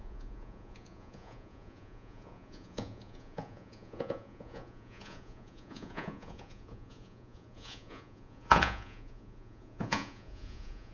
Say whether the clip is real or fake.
fake